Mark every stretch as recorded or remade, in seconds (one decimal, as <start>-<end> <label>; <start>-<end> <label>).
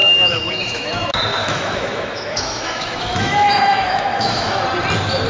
0.0-0.9 remade; 0.9-1.4 recorded; 1.4-4.6 remade; 4.6-5.3 recorded